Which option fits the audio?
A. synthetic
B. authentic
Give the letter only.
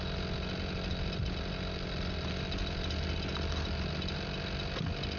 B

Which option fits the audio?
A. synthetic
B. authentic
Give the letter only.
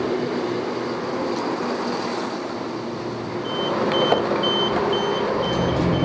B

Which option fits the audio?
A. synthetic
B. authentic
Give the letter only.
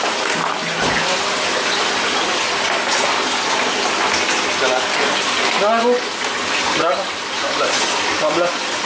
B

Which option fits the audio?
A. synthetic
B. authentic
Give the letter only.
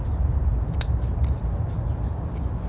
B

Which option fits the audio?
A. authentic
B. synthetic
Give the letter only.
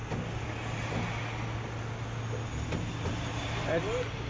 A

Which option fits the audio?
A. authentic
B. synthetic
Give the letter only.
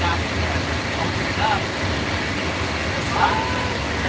A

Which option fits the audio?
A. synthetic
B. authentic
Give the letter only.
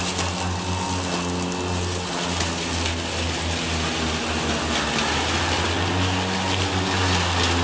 B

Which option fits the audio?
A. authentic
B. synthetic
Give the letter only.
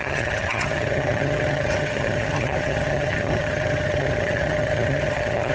B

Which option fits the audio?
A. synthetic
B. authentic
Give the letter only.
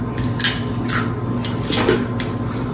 B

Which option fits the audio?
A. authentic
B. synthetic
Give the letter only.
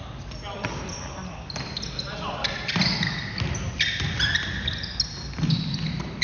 A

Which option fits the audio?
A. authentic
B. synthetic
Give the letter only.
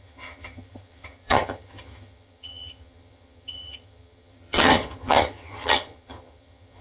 B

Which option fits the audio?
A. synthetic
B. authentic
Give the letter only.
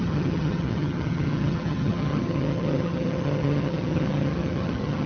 A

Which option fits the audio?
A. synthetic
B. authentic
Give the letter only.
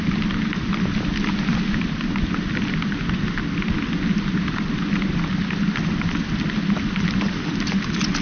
B